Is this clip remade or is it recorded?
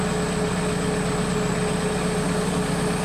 recorded